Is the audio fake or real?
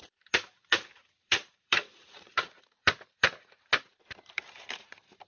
fake